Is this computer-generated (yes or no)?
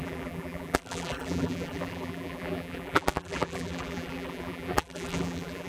yes